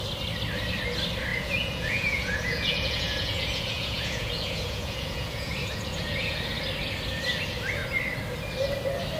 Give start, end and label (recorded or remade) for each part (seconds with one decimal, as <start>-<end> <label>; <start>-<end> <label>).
0.0-1.3 recorded; 1.3-6.4 remade; 6.4-9.2 recorded

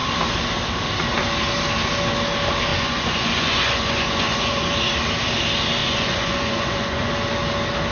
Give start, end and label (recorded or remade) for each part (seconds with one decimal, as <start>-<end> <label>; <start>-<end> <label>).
0.0-2.7 recorded; 2.7-4.7 remade; 4.7-5.8 recorded; 5.8-7.1 remade; 7.1-7.9 recorded

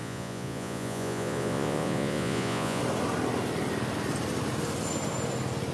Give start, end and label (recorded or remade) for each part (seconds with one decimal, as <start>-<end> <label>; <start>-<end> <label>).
0.0-2.8 remade; 2.8-5.7 recorded

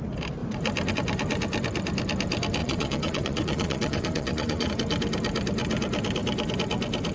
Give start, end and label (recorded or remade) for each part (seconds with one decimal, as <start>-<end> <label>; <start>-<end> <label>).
0.0-2.6 recorded; 2.6-4.7 remade; 4.7-7.1 recorded

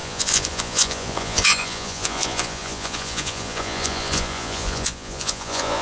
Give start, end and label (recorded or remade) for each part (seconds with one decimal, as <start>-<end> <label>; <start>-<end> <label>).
0.0-5.8 remade

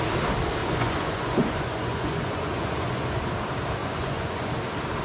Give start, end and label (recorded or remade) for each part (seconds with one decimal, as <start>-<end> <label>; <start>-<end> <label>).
0.0-0.6 recorded; 0.6-3.3 remade; 3.3-3.8 recorded; 3.8-4.5 remade; 4.5-5.0 recorded